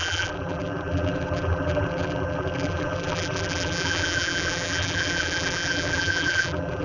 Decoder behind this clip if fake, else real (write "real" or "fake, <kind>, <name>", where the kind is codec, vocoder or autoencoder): fake, vocoder, BigVGAN v2